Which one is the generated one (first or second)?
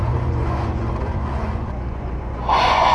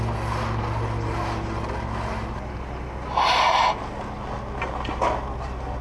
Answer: first